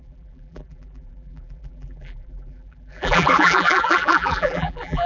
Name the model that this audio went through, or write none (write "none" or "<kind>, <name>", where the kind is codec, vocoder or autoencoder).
vocoder, BigVGAN v2